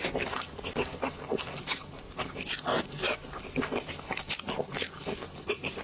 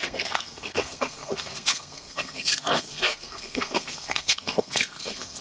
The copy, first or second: second